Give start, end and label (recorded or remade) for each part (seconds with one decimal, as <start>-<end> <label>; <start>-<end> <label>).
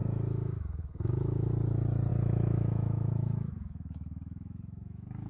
0.0-1.5 remade; 1.5-2.1 recorded; 2.1-5.3 remade